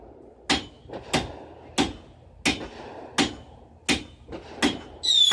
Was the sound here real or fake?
real